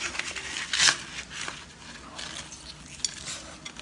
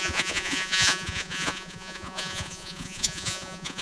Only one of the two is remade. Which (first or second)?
second